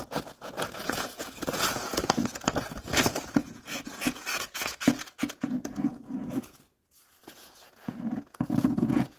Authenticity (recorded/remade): remade